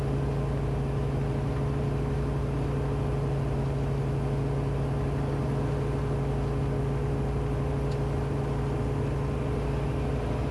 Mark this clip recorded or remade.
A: recorded